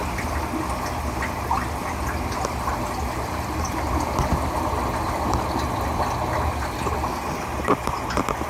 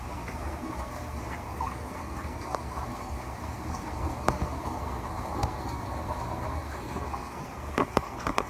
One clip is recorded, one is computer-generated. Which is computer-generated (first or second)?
second